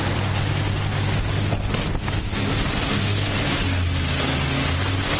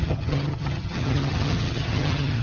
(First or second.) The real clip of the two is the first